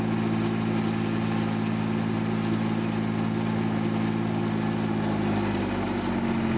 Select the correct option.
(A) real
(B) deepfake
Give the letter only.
A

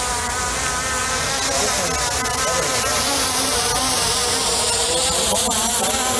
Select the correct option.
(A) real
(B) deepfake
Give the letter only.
A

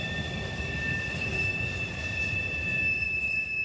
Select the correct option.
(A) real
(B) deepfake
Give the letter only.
B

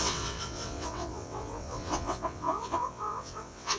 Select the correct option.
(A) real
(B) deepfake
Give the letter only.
B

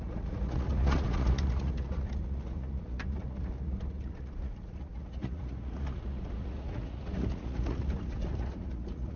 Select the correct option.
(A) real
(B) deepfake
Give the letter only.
B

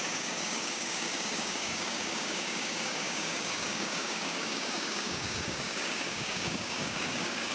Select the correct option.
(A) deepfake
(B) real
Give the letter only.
A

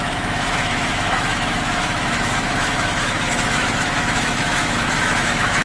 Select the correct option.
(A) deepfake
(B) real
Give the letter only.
A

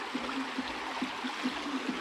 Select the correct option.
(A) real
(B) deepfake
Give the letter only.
A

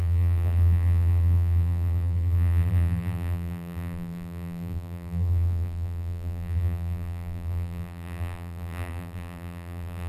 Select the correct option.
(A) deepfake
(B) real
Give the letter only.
A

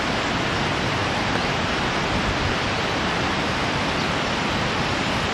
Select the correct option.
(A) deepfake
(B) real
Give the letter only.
B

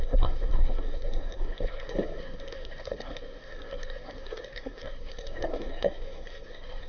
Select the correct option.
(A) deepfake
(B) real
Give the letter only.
A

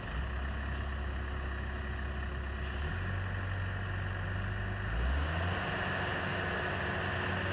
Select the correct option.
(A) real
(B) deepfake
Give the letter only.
A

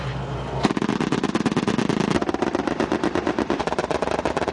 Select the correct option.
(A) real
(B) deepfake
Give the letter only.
A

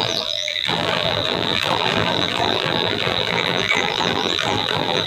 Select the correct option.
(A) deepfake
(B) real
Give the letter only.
A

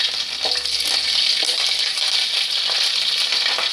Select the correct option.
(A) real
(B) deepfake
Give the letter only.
A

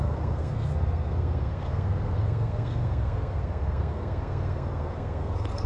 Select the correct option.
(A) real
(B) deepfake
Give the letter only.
B